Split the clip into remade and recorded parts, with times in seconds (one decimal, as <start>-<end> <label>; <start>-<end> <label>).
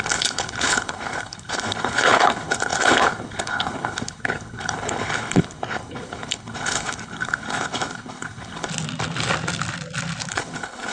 0.0-8.7 remade; 8.7-10.3 recorded; 10.3-10.9 remade